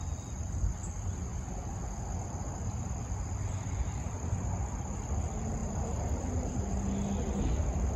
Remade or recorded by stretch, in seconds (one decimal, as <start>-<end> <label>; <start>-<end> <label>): 0.0-5.6 recorded; 5.6-6.6 remade; 6.6-8.0 recorded